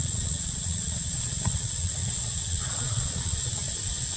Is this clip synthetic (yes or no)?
yes